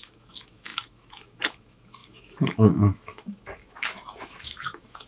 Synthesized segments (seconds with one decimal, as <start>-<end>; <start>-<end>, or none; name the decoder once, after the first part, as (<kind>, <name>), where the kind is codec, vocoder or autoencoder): 0.0-5.1 (autoencoder, DAC-VAE)